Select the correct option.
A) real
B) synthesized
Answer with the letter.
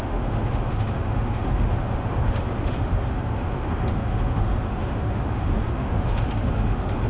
B